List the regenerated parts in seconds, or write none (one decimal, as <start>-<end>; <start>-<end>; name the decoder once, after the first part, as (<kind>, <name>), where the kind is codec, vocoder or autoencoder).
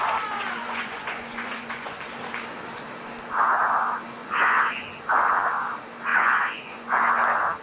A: 0.6-2.0 (vocoder, Vocos); 4.2-5.3; 6.1-7.0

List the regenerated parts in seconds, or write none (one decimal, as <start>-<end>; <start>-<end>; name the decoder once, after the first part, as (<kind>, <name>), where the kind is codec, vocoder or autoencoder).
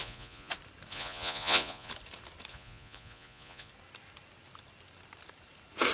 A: 0.0-0.5 (vocoder, Vocos); 0.9-1.9; 2.5-3.7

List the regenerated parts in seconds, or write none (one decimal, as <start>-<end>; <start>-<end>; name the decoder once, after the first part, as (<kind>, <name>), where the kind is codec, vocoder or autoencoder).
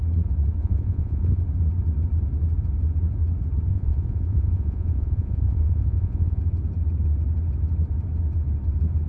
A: 0.6-1.4 (vocoder, Vocos); 3.7-6.4